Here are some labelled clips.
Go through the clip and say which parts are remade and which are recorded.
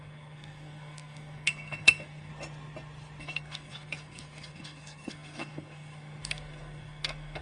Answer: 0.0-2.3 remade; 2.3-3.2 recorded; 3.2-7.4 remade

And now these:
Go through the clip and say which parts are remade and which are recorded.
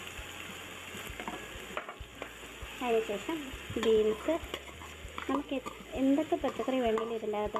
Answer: 0.0-7.6 recorded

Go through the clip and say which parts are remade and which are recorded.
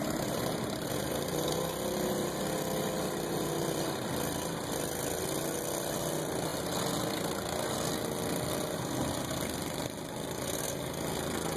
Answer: 0.0-11.6 recorded